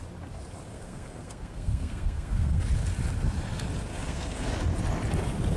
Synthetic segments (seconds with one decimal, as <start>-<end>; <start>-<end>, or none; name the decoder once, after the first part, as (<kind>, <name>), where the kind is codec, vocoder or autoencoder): 0.7-2.6 (codec, SNAC); 3.9-4.5